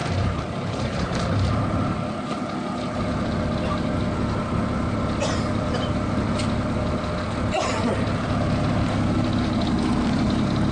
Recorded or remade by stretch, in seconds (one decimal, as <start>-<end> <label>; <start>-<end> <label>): 0.0-1.6 remade; 1.6-10.7 recorded